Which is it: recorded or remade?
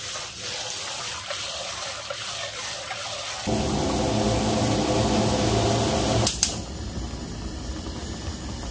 recorded